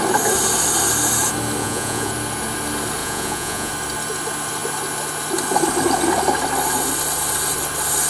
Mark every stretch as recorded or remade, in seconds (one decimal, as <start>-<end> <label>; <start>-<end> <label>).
0.0-1.6 recorded; 1.6-2.1 remade; 2.1-3.0 recorded; 3.0-3.7 remade; 3.7-8.1 recorded